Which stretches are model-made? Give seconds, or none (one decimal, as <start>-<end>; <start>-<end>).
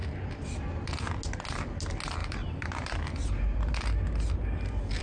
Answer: 2.2-3.7